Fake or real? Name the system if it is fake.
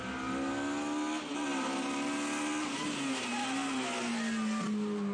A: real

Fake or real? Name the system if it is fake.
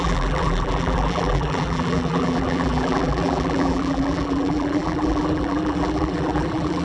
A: fake, vocoder, BigVGAN v2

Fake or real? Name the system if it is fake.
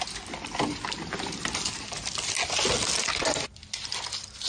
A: real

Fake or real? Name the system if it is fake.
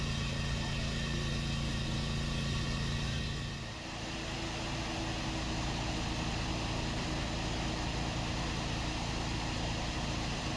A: real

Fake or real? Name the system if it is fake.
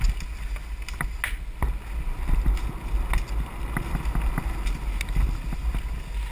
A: real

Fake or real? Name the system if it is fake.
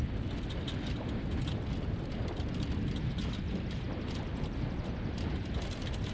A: real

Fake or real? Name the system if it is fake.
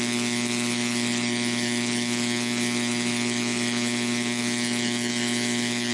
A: fake, autoencoder, DAC-VAE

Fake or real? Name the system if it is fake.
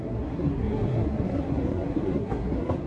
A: fake, codec, SNAC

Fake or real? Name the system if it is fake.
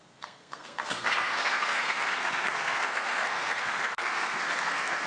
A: fake, codec, SNAC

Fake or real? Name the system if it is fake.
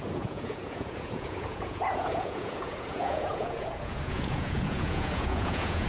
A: fake, vocoder, Vocos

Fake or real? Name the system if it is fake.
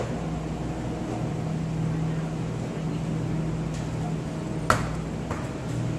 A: real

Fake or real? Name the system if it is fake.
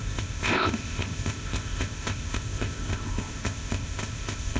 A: fake, codec, ZipCodec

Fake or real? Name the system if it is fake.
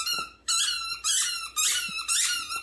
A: real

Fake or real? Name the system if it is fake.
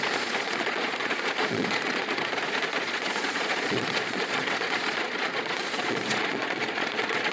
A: fake, vocoder, Vocos